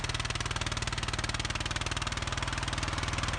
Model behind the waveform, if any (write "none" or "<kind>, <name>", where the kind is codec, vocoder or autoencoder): none